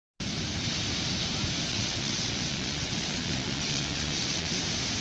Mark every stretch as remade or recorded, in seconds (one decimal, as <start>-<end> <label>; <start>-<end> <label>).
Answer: 0.0-1.7 recorded; 1.7-4.6 remade; 4.6-5.0 recorded